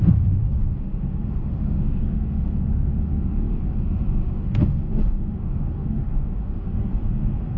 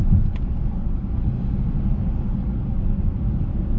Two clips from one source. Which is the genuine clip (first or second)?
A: second